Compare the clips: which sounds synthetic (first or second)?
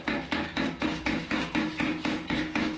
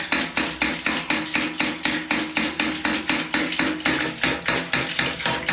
first